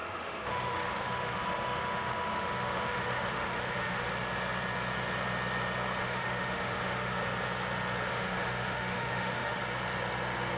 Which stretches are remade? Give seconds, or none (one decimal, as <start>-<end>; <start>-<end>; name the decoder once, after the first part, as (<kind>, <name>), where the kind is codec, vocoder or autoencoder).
0.0-4.1 (autoencoder, DAC-VAE); 6.0-7.2; 8.1-9.6